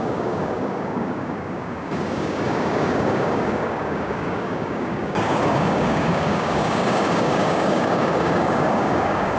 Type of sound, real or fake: fake